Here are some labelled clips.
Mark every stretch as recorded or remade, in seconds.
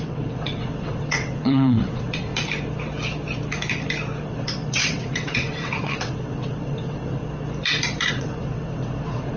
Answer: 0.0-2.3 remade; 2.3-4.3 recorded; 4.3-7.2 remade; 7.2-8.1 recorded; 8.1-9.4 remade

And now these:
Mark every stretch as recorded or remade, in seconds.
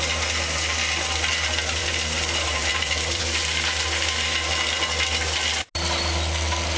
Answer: 0.0-1.8 recorded; 1.8-3.2 remade; 3.2-6.8 recorded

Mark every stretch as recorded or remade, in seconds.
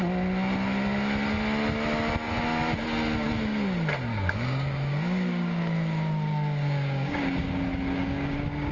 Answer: 0.0-4.1 recorded; 4.1-8.7 remade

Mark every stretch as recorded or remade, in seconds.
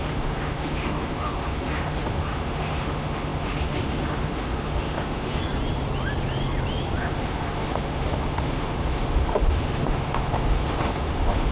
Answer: 0.0-5.4 remade; 5.4-7.0 recorded; 7.0-11.5 remade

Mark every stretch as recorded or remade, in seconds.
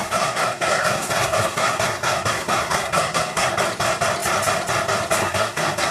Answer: 0.0-3.5 remade; 3.5-5.2 recorded; 5.2-5.9 remade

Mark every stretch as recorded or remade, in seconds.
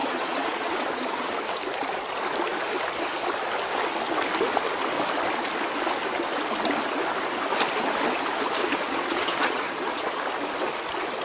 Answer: 0.0-1.3 remade; 1.3-8.6 recorded; 8.6-10.2 remade; 10.2-11.2 recorded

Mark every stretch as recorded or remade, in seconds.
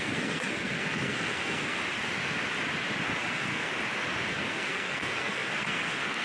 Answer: 0.0-1.8 remade; 1.8-3.2 recorded; 3.2-3.7 remade; 3.7-4.3 recorded; 4.3-6.2 remade